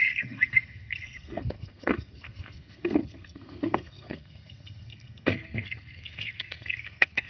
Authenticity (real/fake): fake